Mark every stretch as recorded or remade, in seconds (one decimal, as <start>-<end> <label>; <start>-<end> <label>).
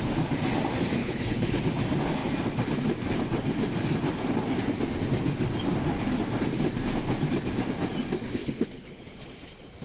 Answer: 0.0-1.0 recorded; 1.0-1.6 remade; 1.6-8.4 recorded; 8.4-9.2 remade; 9.2-9.8 recorded